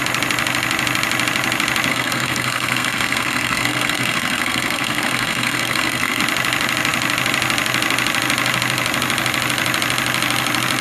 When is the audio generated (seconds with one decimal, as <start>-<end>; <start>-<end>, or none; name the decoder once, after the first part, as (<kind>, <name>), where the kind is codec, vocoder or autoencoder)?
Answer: 1.9-6.2 (codec, SNAC)